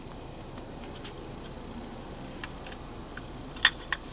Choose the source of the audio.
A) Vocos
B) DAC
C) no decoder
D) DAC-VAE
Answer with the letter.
C